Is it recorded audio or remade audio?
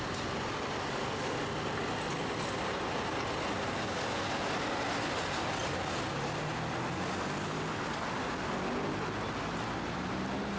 recorded